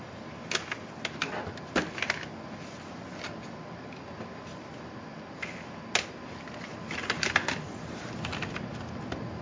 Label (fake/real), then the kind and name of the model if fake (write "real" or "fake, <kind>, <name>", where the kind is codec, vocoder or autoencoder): real